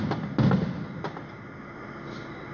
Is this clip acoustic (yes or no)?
yes